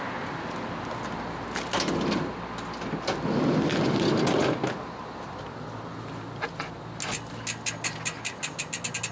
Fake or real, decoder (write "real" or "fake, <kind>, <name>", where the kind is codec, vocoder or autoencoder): real